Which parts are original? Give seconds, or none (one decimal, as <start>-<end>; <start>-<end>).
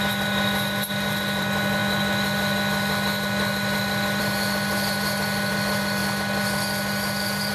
0.0-7.5